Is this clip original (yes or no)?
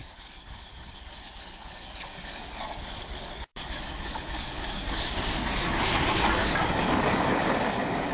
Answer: no